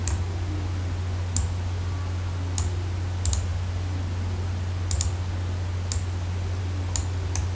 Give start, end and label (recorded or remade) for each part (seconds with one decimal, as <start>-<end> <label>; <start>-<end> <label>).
0.0-7.5 recorded